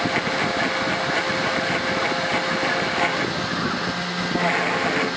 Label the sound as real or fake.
real